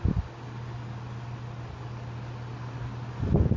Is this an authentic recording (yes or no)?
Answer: yes